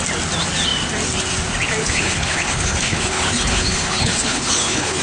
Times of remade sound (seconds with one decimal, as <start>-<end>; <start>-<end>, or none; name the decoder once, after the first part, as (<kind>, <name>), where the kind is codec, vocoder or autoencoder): 1.8-5.0 (codec, HILCodec)

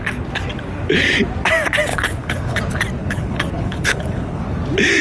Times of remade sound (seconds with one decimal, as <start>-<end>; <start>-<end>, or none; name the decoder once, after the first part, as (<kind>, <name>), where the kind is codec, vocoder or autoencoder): 1.9-2.6 (codec, HILCodec); 3.0-4.4

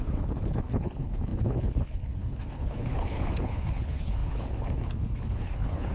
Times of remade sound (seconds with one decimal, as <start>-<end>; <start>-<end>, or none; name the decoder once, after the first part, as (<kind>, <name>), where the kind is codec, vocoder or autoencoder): 0.0-5.9 (codec, HILCodec)

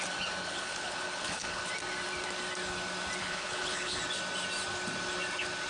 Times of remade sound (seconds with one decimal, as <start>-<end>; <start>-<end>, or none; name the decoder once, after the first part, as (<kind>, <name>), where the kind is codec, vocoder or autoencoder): 0.4-1.6 (codec, HILCodec); 3.2-4.0

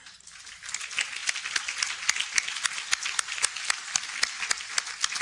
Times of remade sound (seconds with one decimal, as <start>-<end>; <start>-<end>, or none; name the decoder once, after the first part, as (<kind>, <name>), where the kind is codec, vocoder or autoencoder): none

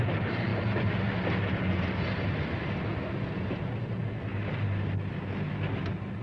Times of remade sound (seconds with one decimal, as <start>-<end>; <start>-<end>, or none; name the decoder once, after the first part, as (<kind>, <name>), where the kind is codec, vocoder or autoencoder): none